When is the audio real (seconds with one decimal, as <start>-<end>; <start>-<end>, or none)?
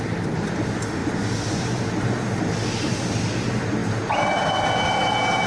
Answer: 0.0-5.5